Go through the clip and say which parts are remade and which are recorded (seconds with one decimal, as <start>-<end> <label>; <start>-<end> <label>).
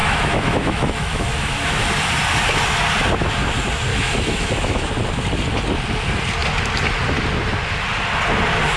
0.0-1.9 remade; 1.9-3.9 recorded; 3.9-4.9 remade; 4.9-8.8 recorded